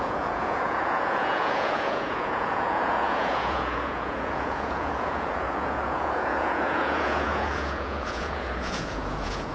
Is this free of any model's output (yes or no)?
no